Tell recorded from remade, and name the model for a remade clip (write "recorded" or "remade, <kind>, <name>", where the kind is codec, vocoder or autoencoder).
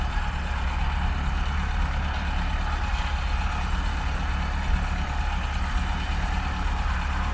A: recorded